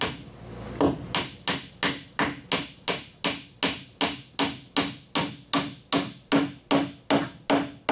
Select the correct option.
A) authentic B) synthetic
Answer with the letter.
A